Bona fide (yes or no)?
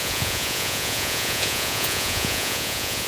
no